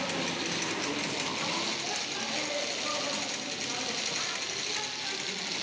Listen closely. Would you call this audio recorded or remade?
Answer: recorded